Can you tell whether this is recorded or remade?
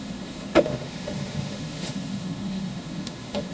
remade